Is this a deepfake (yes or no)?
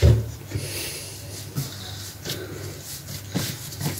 no